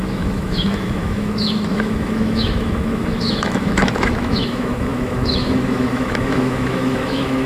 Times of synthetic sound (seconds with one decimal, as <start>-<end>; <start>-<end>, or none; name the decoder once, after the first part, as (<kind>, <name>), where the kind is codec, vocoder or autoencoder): 0.0-7.5 (autoencoder, DAC-VAE)